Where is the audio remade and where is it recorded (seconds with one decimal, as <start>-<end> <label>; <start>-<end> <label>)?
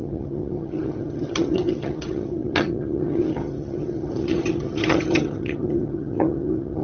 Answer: 0.0-6.8 remade